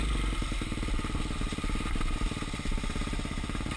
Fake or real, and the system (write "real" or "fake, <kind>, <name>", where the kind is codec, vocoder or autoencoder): real